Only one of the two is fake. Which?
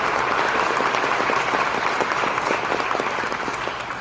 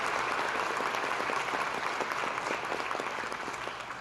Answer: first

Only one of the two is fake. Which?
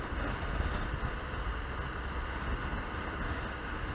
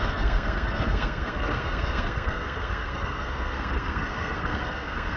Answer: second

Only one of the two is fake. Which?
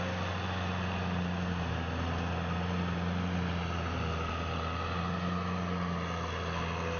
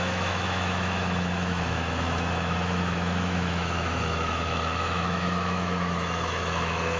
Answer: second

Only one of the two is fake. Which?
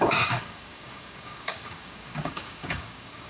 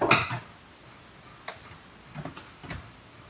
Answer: first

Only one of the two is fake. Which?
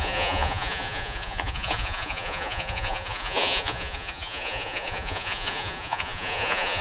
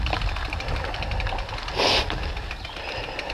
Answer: first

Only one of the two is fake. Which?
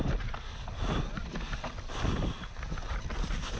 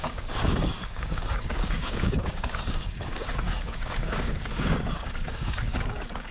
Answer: second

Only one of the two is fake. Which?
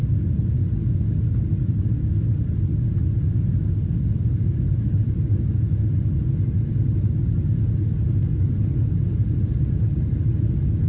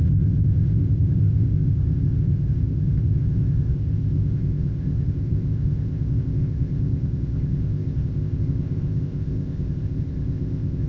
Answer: second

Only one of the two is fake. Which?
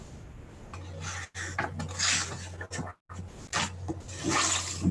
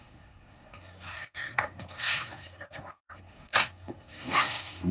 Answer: second